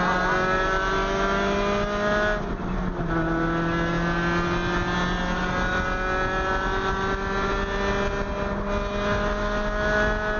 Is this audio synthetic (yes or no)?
no